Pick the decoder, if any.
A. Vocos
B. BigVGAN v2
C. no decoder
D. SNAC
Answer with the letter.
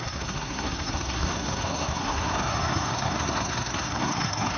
D